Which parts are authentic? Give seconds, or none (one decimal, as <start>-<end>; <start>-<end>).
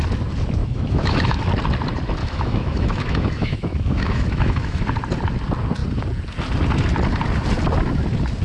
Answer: 0.0-0.6; 1.4-2.2; 4.8-8.4